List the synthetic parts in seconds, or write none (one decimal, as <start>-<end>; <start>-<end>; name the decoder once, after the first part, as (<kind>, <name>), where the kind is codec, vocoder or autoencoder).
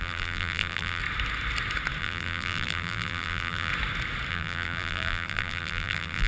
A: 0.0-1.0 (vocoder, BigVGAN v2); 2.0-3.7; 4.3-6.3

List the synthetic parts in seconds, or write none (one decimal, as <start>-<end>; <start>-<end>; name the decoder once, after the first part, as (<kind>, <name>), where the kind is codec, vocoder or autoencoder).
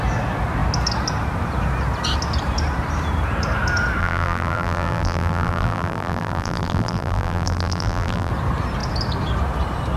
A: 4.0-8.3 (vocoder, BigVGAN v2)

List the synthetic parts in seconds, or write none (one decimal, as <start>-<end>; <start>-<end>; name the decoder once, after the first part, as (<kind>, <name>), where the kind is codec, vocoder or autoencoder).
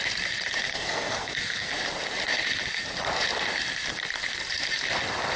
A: 0.7-1.7 (codec, SNAC)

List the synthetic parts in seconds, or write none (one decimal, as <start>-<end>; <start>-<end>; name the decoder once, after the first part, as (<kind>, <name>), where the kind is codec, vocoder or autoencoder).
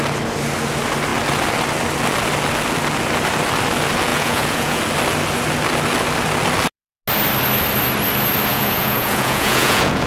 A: 4.1-4.8 (vocoder, Vocos); 8.5-10.1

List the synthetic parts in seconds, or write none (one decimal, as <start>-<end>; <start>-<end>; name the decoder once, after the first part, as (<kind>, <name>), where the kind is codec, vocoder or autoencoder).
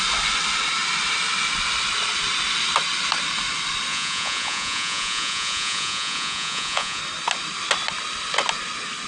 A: 3.9-7.0 (vocoder, Vocos)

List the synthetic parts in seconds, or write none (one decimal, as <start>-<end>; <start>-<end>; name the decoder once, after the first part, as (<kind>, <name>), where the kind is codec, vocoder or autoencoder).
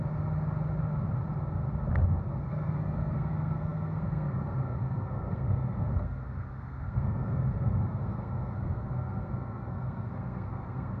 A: 2.3-11.0 (codec, SNAC)